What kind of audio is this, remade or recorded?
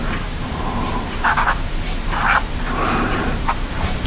remade